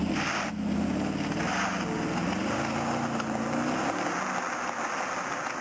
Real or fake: real